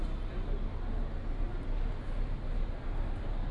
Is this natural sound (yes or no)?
yes